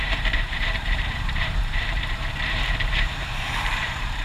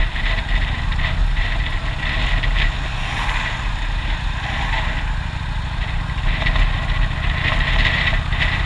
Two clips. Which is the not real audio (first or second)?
first